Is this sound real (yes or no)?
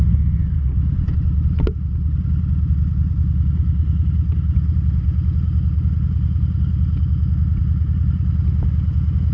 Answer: yes